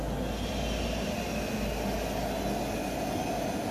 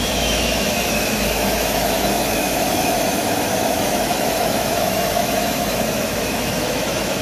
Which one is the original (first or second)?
first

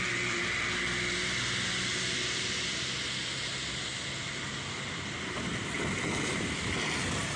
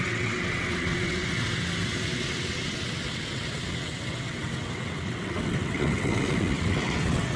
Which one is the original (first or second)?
first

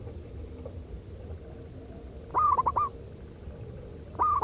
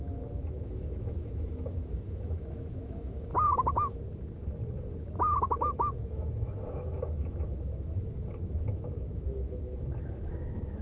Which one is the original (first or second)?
first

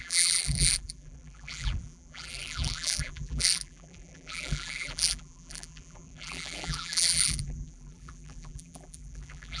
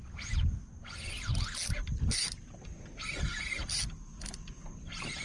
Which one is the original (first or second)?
second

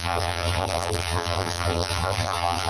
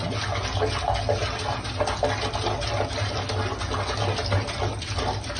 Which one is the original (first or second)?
second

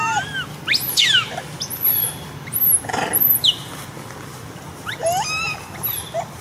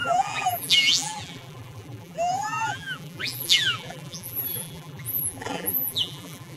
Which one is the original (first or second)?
first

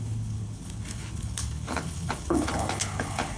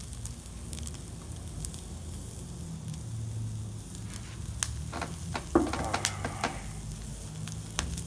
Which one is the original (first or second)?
second